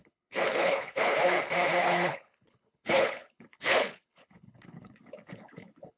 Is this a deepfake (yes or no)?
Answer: yes